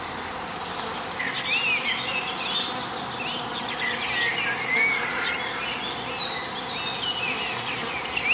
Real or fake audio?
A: real